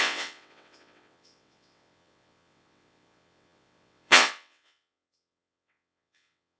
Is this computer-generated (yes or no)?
yes